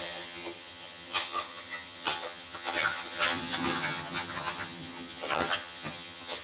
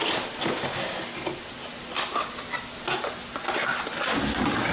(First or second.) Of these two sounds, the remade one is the first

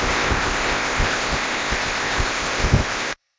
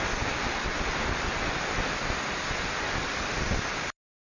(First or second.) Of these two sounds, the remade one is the first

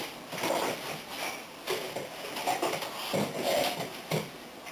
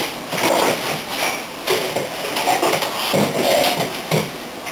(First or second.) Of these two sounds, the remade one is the first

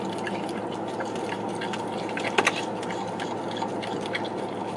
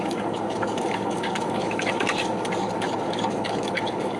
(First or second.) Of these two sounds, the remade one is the second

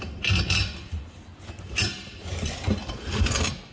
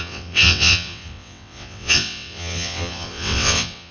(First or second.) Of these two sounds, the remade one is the second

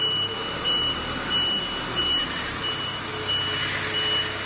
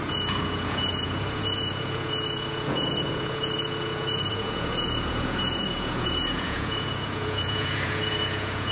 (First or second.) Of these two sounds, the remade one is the second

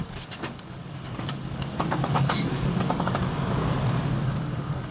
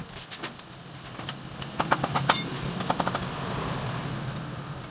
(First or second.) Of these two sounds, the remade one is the first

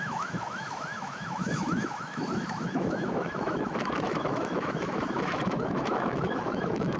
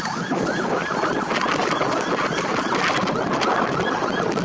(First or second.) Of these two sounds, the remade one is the first